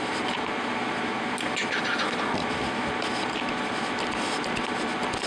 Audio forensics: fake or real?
real